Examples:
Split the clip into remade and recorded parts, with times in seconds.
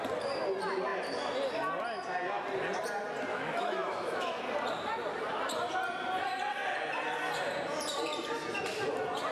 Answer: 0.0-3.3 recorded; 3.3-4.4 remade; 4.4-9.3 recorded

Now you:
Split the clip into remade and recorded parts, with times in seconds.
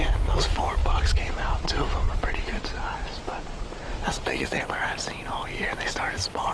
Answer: 0.0-0.8 recorded; 0.8-4.6 remade; 4.6-6.5 recorded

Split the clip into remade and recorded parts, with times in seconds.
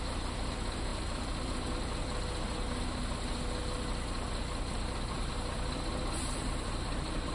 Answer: 0.0-7.3 recorded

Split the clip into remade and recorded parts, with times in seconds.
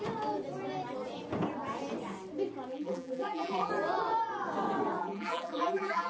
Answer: 0.0-2.7 recorded; 2.7-3.7 remade; 3.7-5.0 recorded; 5.0-6.1 remade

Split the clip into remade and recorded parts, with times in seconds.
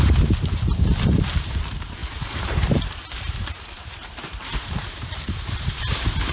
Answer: 0.0-6.3 remade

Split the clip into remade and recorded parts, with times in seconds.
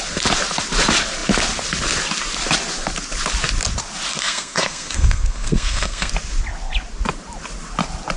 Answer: 0.0-4.1 recorded; 4.1-6.1 remade; 6.1-8.2 recorded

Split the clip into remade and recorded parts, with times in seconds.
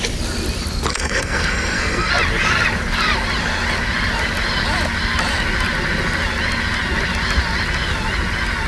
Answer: 0.0-0.9 recorded; 0.9-2.1 remade; 2.1-8.7 recorded